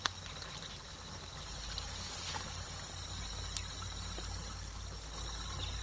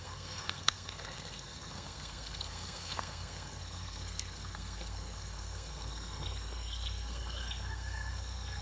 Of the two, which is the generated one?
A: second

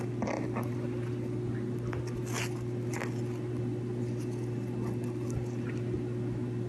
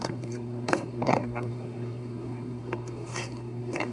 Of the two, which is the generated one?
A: second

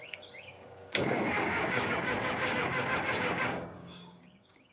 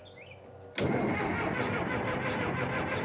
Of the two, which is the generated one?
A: first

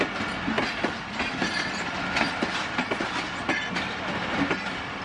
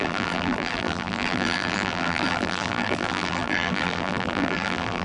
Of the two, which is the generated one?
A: second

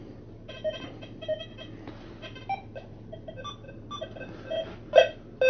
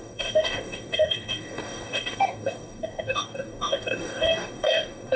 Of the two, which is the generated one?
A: second